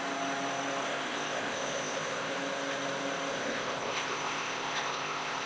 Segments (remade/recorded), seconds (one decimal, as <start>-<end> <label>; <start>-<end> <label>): 0.0-0.8 recorded; 0.8-2.3 remade; 2.3-3.3 recorded; 3.3-5.5 remade